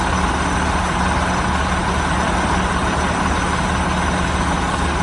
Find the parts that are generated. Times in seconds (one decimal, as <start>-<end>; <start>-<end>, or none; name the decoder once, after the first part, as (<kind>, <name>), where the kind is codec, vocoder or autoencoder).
none